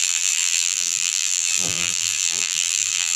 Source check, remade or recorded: remade